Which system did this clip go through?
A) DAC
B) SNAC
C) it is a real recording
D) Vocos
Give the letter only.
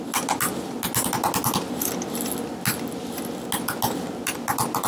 C